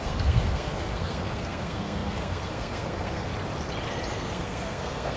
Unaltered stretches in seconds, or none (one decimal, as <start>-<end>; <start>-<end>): 3.3-4.1